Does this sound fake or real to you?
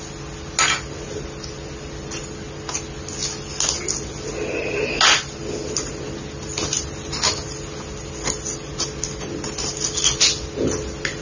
real